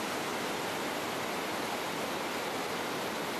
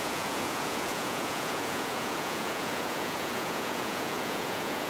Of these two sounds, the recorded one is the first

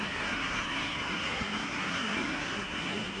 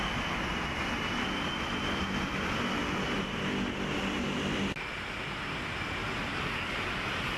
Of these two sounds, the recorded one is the second